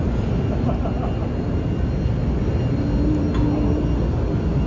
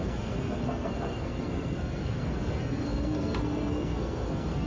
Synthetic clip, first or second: second